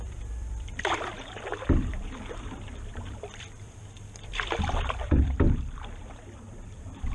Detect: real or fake fake